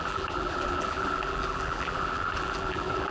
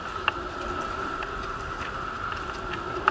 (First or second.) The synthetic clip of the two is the first